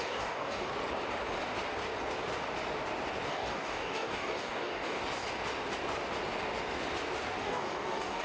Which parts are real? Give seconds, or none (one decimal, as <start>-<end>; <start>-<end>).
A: 0.7-3.3; 5.0-7.4